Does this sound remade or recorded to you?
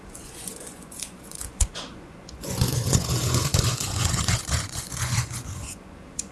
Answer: remade